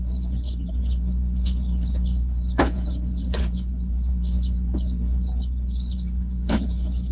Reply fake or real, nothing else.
fake